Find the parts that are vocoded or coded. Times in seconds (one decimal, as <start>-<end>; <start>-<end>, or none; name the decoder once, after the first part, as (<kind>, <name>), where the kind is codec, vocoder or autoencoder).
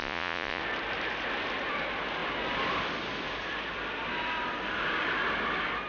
0.0-0.6 (vocoder, Vocos)